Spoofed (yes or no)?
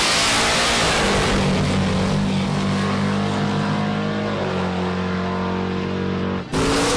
no